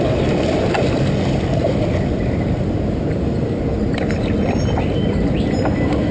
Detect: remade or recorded recorded